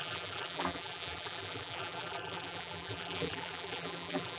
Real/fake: fake